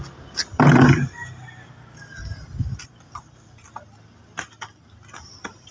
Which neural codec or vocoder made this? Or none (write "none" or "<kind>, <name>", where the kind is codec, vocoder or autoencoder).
none